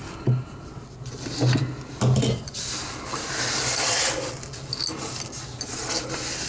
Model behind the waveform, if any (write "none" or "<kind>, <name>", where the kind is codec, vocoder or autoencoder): none